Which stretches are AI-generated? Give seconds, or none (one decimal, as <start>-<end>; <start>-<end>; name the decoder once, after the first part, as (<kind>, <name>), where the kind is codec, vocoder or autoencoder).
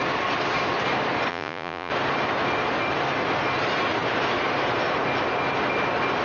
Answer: 1.3-1.9 (vocoder, Vocos)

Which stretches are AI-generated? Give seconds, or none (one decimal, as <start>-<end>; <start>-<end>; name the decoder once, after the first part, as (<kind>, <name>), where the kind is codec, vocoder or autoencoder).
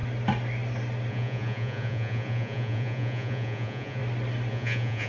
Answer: 1.1-4.0 (vocoder, Vocos); 4.5-5.1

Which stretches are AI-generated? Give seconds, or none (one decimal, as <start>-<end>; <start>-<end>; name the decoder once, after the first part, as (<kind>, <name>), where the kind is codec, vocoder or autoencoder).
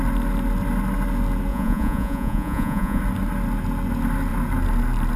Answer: 1.5-3.0 (vocoder, Vocos)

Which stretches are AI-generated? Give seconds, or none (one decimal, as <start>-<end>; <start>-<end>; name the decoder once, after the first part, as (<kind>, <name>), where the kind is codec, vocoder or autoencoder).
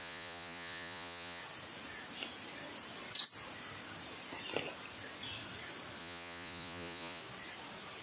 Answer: 0.0-1.4 (vocoder, Vocos); 6.0-7.2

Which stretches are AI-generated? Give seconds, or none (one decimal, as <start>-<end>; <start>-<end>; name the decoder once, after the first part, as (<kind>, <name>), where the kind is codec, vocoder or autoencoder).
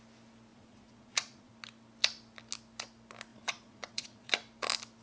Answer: 0.5-1.5 (vocoder, Vocos); 3.3-4.3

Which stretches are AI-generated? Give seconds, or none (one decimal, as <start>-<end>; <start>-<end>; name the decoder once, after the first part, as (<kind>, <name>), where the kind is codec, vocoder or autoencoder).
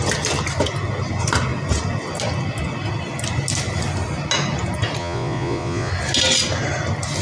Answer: 5.0-5.9 (vocoder, Vocos)